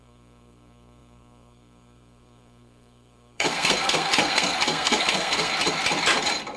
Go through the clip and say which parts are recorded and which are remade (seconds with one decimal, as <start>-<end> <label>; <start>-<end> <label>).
0.0-5.5 remade; 5.5-6.6 recorded